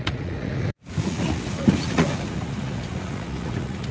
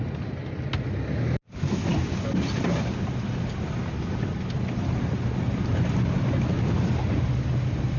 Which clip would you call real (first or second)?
second